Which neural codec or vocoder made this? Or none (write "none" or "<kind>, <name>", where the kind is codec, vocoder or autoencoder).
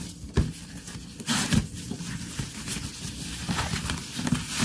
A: none